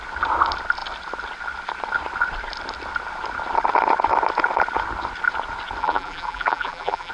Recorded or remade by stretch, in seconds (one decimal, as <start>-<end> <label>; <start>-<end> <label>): 0.0-5.8 recorded; 5.8-7.1 remade